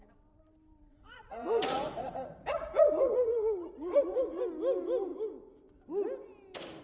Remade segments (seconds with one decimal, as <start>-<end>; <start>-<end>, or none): 0.9-4.4